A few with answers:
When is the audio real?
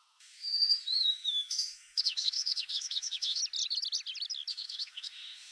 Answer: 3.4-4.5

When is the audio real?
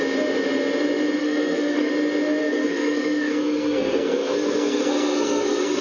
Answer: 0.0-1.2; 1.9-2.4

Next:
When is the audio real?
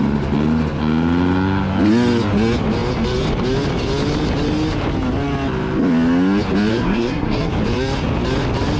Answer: 0.0-6.7; 7.5-8.8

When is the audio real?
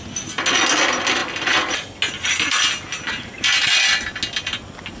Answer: 0.0-5.0